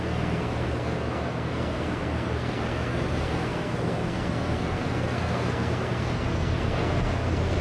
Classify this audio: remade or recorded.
remade